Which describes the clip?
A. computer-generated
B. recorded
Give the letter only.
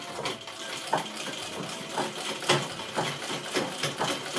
B